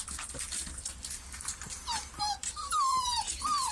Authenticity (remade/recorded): remade